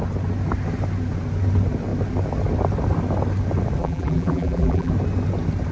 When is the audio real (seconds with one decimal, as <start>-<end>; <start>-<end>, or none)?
0.0-3.8; 4.9-5.7